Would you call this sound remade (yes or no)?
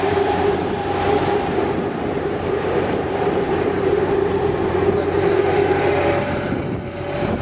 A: yes